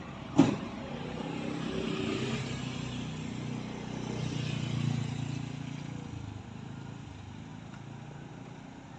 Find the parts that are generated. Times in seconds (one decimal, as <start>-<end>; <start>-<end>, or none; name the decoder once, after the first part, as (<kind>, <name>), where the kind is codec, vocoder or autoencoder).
none